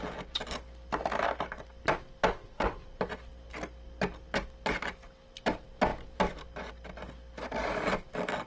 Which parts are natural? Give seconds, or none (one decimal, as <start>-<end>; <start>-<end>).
0.0-2.4; 3.0-8.5